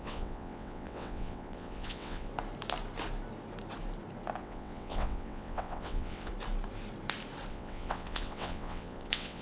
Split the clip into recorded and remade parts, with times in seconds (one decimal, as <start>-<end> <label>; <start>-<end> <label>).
0.0-2.3 remade; 2.3-4.4 recorded; 4.4-6.3 remade; 6.3-7.5 recorded; 7.5-9.4 remade